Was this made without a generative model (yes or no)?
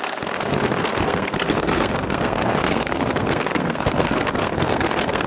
no